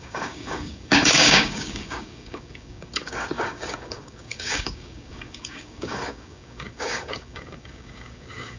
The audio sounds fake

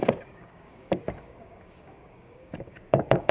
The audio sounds fake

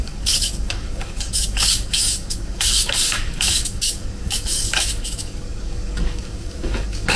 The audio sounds fake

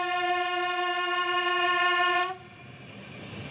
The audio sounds real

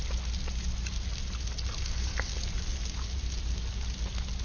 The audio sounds real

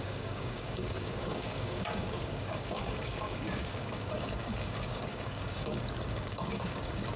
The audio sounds fake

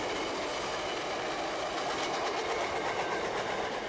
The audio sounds real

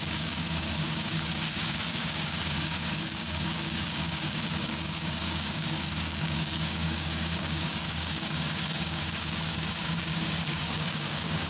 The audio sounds fake